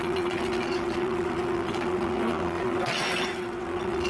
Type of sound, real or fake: fake